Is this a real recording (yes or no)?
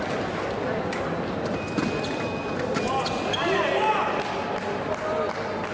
yes